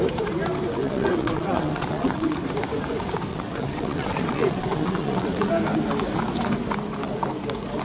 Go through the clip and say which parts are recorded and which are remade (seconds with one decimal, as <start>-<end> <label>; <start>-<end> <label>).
0.0-0.8 recorded; 0.8-2.3 remade; 2.3-3.3 recorded; 3.3-5.5 remade; 5.5-7.8 recorded